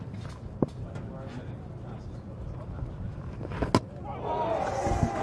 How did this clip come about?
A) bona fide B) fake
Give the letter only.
A